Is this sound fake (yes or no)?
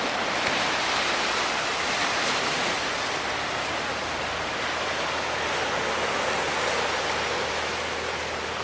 no